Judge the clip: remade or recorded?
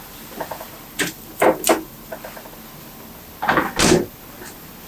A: recorded